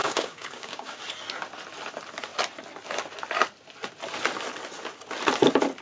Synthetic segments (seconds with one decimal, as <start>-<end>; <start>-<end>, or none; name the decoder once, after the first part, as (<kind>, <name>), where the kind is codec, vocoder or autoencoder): 0.0-1.0 (codec, DAC)